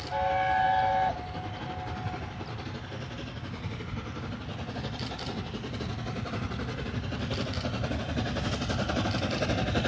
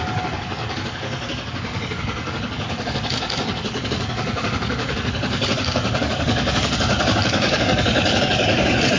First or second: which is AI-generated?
second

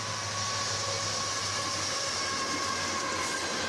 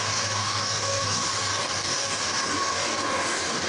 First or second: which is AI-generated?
second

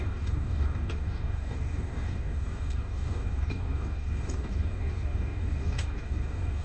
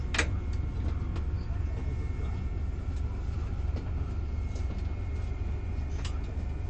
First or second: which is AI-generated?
first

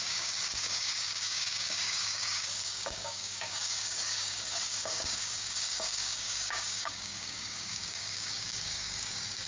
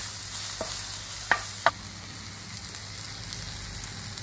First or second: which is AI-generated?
first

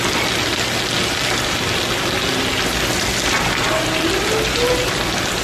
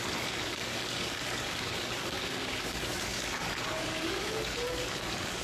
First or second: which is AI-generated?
second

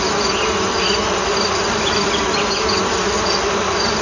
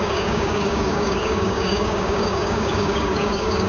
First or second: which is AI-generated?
second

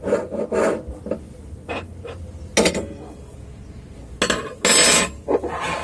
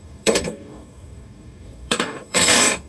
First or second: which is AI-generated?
second